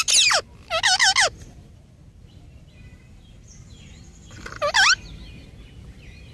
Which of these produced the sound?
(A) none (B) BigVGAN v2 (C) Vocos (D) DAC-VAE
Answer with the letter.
A